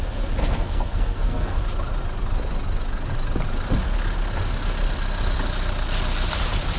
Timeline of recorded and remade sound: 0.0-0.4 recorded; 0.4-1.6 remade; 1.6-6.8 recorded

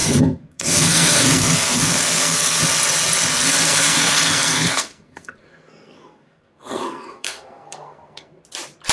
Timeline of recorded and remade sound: 0.0-2.6 remade; 2.6-3.3 recorded; 3.3-8.4 remade; 8.4-8.9 recorded

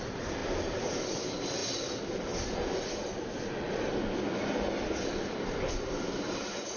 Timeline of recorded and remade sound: 0.0-6.8 recorded

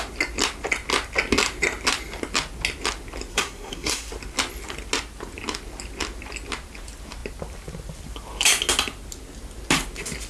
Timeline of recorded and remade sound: 0.0-3.3 recorded; 3.3-4.1 remade; 4.1-10.3 recorded

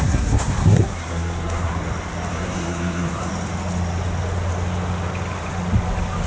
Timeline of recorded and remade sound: 0.0-1.7 remade; 1.7-2.3 recorded; 2.3-3.3 remade; 3.3-6.3 recorded

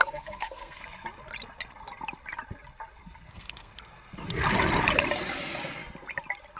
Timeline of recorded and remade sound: 0.0-0.8 remade; 0.8-3.3 recorded; 3.3-3.7 remade; 3.7-6.6 recorded

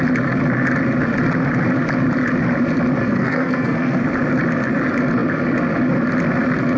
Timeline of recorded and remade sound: 0.0-3.0 recorded; 3.0-4.0 remade; 4.0-6.8 recorded

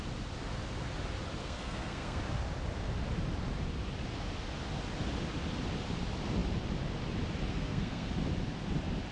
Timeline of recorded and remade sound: 0.0-1.4 recorded; 1.4-2.2 remade; 2.2-7.5 recorded; 7.5-8.1 remade; 8.1-9.1 recorded